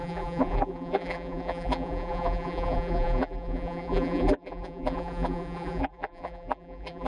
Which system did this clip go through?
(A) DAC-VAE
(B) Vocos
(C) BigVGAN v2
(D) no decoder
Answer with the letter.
C